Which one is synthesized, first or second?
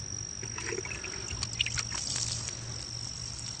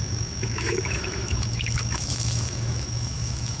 second